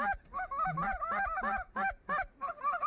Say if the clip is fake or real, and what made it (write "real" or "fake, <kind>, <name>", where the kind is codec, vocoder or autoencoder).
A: real